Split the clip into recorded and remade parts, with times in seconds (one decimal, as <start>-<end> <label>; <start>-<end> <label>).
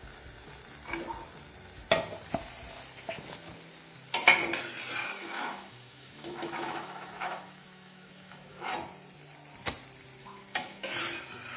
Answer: 0.0-5.0 recorded; 5.0-8.7 remade; 8.7-10.2 recorded; 10.2-11.0 remade; 11.0-11.6 recorded